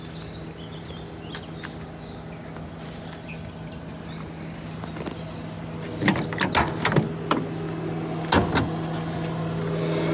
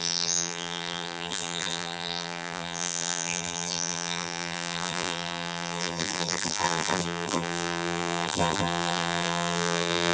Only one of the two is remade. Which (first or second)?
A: second